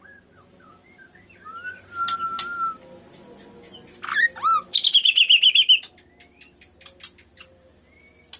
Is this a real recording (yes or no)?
yes